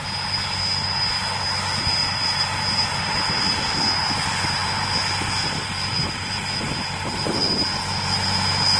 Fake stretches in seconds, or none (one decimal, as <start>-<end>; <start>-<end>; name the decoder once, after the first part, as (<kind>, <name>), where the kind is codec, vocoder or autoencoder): none